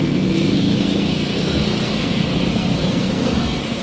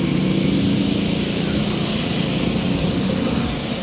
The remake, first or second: first